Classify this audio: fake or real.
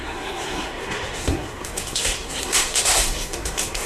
fake